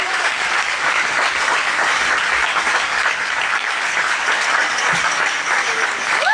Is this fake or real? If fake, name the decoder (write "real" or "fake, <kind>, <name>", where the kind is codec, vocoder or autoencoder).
fake, codec, DAC